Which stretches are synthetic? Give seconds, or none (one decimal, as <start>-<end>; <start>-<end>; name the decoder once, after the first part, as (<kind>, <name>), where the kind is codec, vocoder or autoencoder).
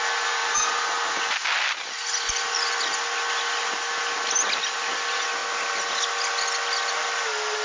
none